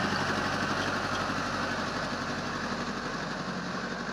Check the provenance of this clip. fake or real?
real